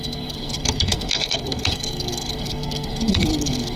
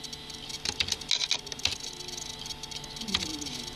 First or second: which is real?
second